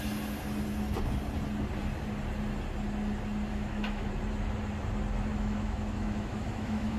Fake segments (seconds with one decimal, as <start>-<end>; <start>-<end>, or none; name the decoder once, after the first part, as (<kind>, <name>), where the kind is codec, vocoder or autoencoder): 3.5-4.1 (autoencoder, DAC-VAE); 5.3-7.0